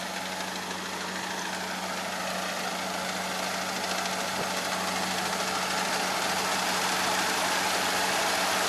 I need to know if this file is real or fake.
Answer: real